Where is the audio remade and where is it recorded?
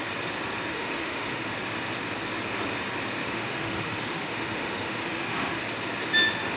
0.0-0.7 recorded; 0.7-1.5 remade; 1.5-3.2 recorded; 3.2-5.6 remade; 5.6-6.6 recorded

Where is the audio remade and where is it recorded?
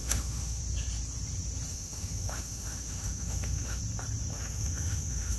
0.0-0.6 remade; 0.6-1.7 recorded; 1.7-3.8 remade; 3.8-4.3 recorded; 4.3-5.4 remade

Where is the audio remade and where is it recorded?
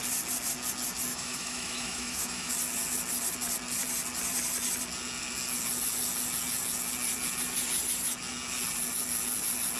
0.0-1.1 recorded; 1.1-2.5 remade; 2.5-9.8 recorded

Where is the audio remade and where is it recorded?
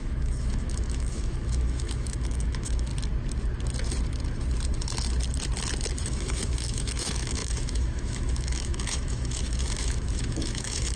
0.0-2.9 remade; 2.9-6.1 recorded; 6.1-11.0 remade